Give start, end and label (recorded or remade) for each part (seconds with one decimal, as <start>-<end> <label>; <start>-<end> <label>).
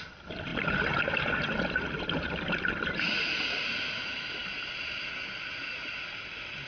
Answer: 0.0-6.7 recorded